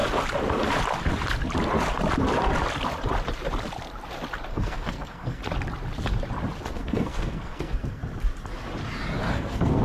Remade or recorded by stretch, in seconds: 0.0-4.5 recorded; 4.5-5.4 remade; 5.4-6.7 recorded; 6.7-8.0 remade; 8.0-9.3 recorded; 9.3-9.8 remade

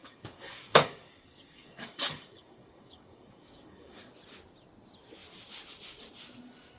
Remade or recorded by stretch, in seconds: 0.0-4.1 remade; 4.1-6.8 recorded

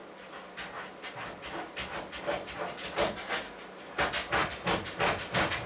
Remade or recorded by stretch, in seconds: 0.0-5.7 recorded